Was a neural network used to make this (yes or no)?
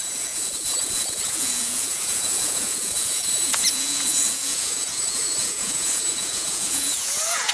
yes